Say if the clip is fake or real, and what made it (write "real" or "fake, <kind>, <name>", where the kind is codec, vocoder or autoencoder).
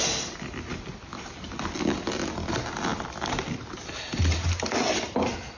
real